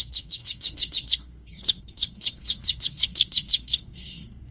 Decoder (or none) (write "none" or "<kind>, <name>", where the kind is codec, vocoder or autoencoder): codec, SNAC